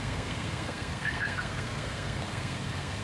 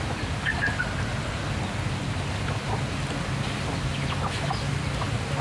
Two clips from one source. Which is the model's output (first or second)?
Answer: first